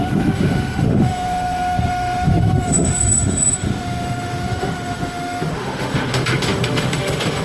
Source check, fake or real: fake